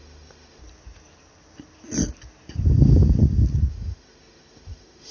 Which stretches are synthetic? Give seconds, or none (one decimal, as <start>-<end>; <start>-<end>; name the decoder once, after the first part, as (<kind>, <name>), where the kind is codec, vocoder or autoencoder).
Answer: 0.0-0.6 (autoencoder, DAC-VAE); 3.7-5.1